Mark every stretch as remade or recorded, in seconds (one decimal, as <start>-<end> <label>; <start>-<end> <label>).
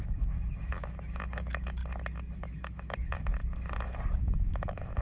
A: 0.0-1.8 remade; 1.8-2.3 recorded; 2.3-3.4 remade; 3.4-4.2 recorded; 4.2-5.0 remade